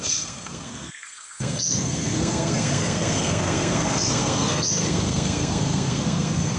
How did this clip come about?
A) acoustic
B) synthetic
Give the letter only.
B